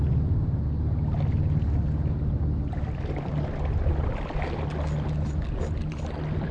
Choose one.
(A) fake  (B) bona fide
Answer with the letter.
B